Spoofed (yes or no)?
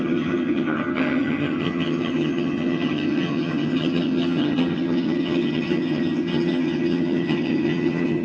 yes